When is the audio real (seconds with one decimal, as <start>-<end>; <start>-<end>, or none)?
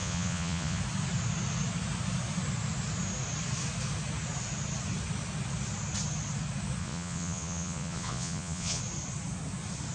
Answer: 0.8-6.8; 8.8-9.9